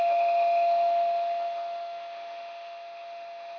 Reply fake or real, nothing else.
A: fake